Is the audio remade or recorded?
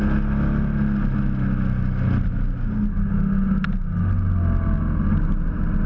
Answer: recorded